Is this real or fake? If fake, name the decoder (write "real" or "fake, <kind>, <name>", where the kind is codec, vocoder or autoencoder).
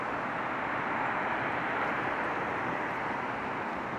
real